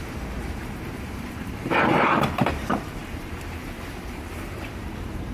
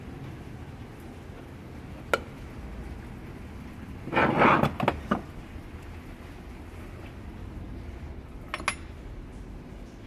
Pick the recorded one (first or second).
second